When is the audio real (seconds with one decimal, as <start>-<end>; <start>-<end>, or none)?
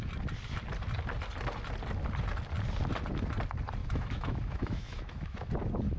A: 0.0-3.8; 5.5-6.0